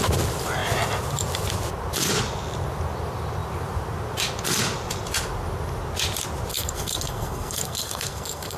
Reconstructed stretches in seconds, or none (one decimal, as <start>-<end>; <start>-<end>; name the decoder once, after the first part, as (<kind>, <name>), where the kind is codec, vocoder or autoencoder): 6.5-8.6 (codec, SNAC)